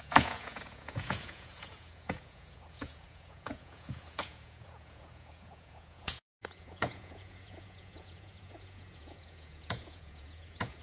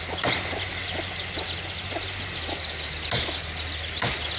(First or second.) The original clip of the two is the second